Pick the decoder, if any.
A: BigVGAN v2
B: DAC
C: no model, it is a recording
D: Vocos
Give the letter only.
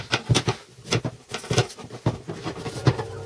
C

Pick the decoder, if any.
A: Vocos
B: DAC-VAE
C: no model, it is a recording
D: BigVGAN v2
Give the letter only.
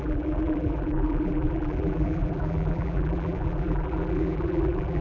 D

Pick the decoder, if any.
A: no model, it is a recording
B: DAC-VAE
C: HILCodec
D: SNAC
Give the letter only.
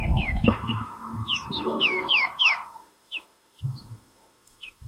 B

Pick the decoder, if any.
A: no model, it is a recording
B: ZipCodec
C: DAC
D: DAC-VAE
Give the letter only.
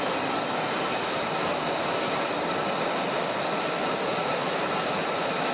A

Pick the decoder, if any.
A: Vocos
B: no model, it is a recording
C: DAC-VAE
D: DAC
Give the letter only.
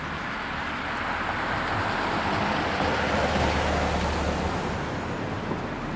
B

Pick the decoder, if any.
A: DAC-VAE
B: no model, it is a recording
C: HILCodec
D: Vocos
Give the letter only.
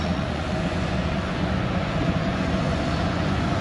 D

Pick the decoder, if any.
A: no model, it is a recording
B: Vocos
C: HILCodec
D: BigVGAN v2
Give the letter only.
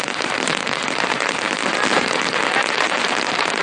D